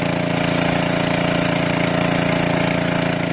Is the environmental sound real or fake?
real